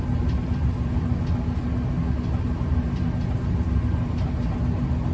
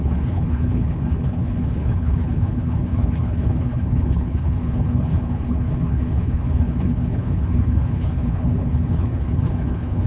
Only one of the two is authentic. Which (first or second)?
first